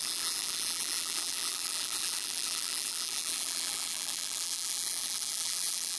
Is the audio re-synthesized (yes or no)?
yes